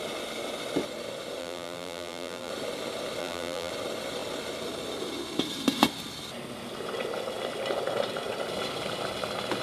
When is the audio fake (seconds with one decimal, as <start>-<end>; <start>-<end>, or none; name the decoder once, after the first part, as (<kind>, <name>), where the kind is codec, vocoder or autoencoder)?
1.4-2.5 (vocoder, BigVGAN v2); 3.2-3.7